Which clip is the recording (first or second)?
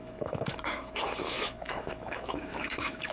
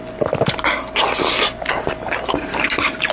second